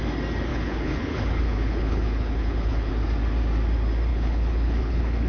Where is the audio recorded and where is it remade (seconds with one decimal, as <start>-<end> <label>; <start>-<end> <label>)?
0.0-0.5 recorded; 0.5-2.9 remade; 2.9-4.1 recorded; 4.1-5.3 remade